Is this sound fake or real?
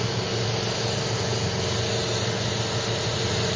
real